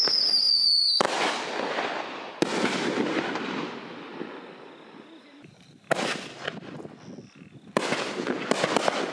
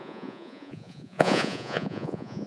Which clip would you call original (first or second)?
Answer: first